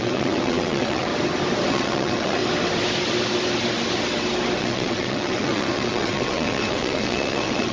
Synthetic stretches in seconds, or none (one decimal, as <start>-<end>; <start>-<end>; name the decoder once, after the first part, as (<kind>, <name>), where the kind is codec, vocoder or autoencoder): 0.0-1.1 (vocoder, WaveNeXt); 1.7-2.4; 4.6-7.7

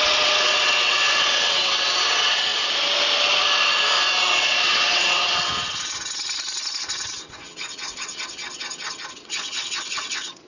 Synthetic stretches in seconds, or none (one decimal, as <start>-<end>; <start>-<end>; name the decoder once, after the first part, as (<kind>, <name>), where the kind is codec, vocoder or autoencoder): 0.0-2.5 (vocoder, WaveNeXt); 4.6-5.5; 7.1-8.4; 9.1-10.5

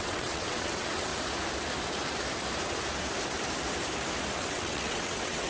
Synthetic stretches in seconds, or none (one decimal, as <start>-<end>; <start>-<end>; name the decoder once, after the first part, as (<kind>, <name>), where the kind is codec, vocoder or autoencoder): 0.0-1.1 (vocoder, WaveNeXt); 4.4-5.5

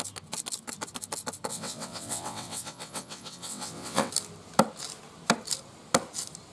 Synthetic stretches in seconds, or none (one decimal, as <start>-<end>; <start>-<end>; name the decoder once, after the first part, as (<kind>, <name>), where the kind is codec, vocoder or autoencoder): 1.5-4.1 (vocoder, WaveNeXt)

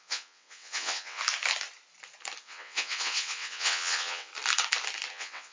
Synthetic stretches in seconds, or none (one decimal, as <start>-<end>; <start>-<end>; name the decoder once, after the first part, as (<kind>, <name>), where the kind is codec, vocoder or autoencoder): 0.0-1.2 (vocoder, WaveNeXt); 2.4-4.3; 5.1-5.5

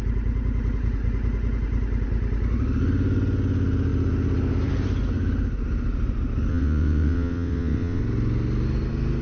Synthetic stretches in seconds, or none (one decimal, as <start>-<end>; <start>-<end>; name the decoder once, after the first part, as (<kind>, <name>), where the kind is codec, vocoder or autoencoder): 6.5-8.0 (vocoder, WaveNeXt)

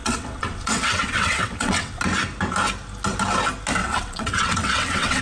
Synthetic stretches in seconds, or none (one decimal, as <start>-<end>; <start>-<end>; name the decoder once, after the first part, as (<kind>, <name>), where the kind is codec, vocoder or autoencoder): 0.0-2.0 (vocoder, WaveNeXt); 3.8-5.2

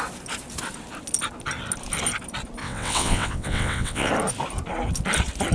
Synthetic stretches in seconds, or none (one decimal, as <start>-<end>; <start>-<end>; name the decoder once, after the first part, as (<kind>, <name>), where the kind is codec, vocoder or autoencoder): 2.6-4.1 (vocoder, WaveNeXt)